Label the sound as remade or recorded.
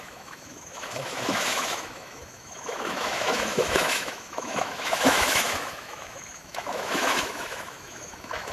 remade